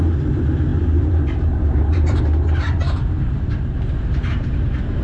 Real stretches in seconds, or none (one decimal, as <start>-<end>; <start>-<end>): none